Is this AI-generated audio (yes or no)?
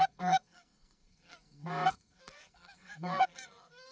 yes